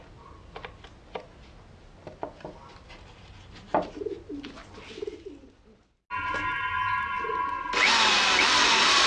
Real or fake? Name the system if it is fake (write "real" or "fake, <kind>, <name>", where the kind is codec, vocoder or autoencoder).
real